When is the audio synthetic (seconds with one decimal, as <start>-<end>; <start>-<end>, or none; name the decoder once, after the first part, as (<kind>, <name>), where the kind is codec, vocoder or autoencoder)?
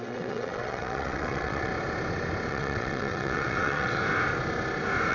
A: 0.0-1.7 (vocoder, WaveNeXt); 2.5-4.0